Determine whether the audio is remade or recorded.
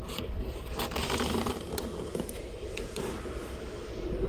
recorded